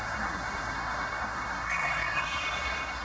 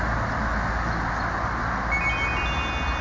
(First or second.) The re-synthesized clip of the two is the first